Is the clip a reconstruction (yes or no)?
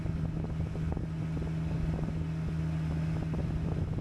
no